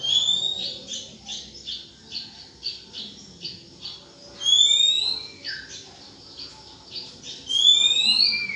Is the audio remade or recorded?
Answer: recorded